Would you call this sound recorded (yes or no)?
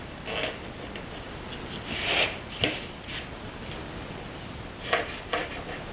yes